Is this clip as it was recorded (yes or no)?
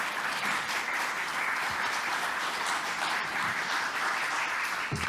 no